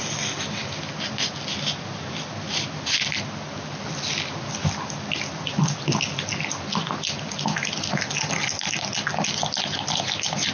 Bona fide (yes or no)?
yes